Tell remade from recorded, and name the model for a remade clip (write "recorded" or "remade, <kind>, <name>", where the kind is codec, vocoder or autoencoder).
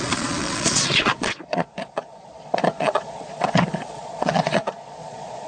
remade, vocoder, Vocos